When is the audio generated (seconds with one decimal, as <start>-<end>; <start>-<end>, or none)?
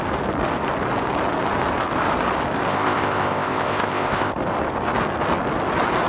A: 2.7-4.3